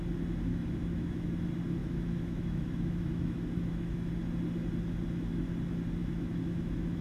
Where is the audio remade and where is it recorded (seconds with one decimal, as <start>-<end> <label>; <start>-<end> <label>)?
0.0-0.5 recorded; 0.5-1.3 remade; 1.3-1.8 recorded; 1.8-4.1 remade; 4.1-6.0 recorded; 6.0-7.0 remade